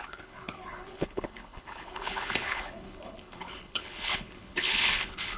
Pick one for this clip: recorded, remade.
remade